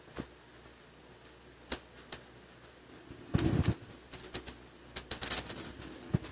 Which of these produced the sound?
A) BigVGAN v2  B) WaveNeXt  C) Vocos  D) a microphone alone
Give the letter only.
D